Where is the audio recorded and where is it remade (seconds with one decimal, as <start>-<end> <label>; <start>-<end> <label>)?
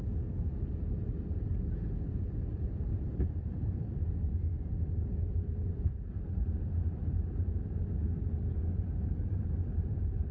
0.0-4.0 remade; 4.0-4.7 recorded; 4.7-8.0 remade; 8.0-8.5 recorded; 8.5-10.3 remade